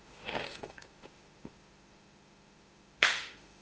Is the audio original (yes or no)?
no